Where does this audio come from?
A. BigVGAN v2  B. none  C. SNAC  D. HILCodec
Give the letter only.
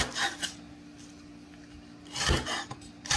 B